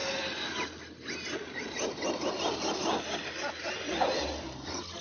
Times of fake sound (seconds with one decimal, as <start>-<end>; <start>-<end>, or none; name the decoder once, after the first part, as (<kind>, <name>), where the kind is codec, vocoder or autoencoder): none